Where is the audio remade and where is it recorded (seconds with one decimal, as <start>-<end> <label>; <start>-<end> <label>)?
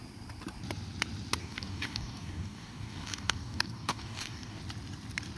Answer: 0.0-1.4 recorded; 1.4-4.6 remade; 4.6-5.4 recorded